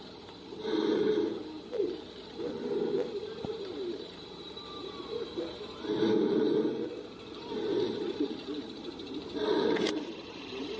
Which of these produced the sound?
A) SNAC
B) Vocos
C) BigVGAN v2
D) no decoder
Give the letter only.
C